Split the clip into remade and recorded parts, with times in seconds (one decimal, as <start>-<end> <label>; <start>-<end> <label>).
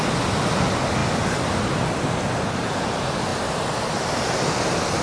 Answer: 0.0-5.0 recorded